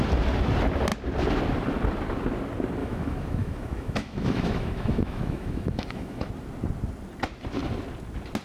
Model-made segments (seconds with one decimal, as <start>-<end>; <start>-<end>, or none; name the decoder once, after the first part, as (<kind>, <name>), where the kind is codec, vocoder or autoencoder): 2.8-6.3 (autoencoder, DAC-VAE)

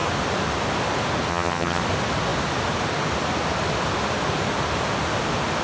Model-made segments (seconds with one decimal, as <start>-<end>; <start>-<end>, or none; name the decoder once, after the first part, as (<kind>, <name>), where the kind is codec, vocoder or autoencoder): 1.3-1.8 (vocoder, HiFi-GAN)

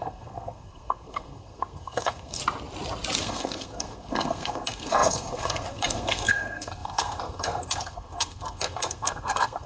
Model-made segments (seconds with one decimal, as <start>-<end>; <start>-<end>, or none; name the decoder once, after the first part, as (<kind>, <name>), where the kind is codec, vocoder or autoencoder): 0.0-2.4 (codec, SNAC); 3.2-9.7

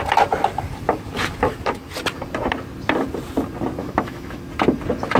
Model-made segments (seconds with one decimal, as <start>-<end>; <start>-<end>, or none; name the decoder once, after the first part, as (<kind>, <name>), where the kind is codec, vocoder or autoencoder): 3.8-4.4 (autoencoder, DAC-VAE)

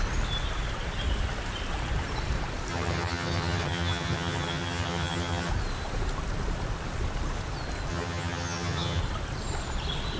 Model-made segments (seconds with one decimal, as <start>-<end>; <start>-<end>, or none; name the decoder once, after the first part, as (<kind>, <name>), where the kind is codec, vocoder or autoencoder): 2.7-5.5 (vocoder, HiFi-GAN); 7.9-9.0

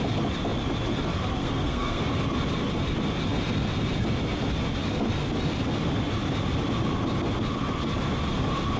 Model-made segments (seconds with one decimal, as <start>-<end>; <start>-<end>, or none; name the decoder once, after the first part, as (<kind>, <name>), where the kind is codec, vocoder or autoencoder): 1.4-2.0 (codec, SNAC)

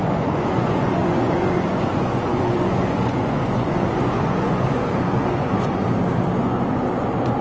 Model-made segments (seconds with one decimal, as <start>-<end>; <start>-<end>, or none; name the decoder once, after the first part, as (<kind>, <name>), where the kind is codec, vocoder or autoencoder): 0.0-5.8 (vocoder, Vocos); 6.4-7.4

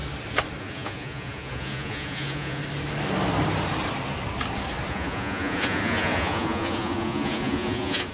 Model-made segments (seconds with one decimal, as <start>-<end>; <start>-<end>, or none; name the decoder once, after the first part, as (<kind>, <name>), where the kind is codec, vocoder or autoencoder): 0.6-2.6 (vocoder, Vocos); 4.9-8.1